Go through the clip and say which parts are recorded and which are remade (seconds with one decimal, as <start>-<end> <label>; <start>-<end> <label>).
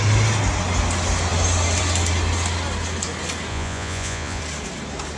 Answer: 0.0-3.5 recorded; 3.5-4.4 remade; 4.4-5.2 recorded